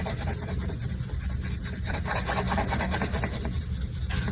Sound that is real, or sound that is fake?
real